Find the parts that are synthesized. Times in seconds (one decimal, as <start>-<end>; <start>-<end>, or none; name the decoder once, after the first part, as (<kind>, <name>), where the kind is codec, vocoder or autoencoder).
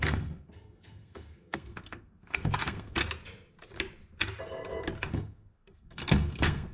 0.0-3.0 (codec, SNAC); 5.1-6.7